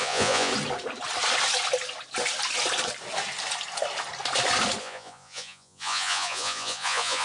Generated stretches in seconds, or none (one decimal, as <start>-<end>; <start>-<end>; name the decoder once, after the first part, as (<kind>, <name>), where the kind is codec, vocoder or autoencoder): 0.0-0.5 (vocoder, Vocos); 4.8-7.2